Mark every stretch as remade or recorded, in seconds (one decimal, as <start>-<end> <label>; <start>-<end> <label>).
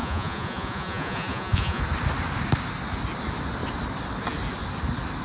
0.0-1.8 remade; 1.8-5.2 recorded